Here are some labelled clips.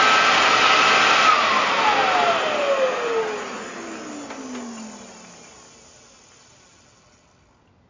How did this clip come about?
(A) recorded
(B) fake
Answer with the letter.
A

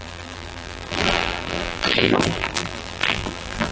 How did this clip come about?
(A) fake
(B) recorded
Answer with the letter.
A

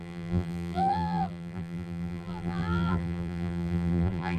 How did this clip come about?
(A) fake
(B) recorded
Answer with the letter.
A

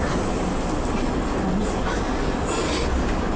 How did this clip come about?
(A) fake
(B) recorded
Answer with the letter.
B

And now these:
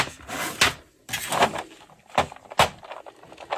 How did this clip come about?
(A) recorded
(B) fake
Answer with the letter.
A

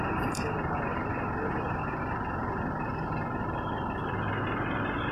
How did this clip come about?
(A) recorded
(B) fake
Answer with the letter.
A